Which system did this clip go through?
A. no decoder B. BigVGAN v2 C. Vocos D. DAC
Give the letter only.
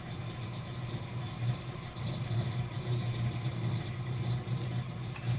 B